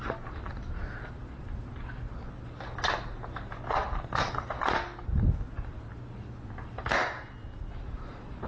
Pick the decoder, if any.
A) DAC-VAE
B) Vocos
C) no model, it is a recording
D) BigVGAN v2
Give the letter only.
C